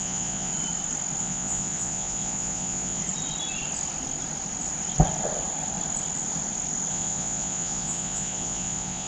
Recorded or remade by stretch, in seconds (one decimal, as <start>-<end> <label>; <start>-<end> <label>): 0.0-0.5 remade; 0.5-1.2 recorded; 1.2-3.0 remade; 3.0-6.9 recorded; 6.9-9.1 remade